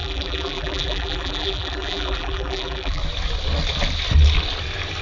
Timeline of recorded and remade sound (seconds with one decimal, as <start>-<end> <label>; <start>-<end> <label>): 0.0-3.0 remade; 3.0-5.0 recorded